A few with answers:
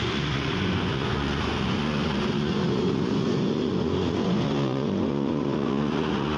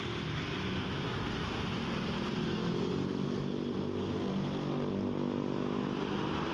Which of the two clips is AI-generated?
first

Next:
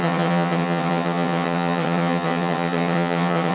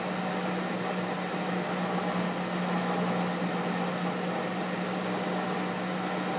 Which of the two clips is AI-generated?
first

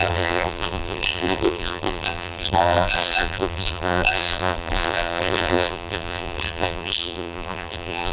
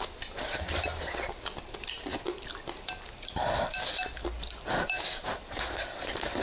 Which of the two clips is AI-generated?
first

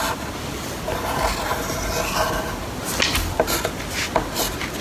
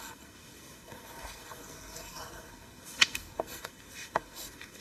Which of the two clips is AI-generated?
second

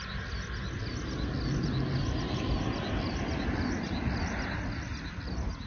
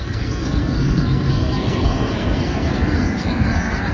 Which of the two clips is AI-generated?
second